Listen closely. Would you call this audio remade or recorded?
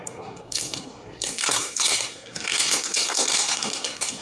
remade